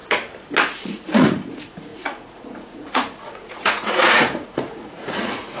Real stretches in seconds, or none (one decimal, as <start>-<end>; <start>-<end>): 0.0-0.6